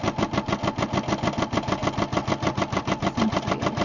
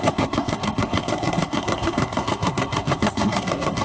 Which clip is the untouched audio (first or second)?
first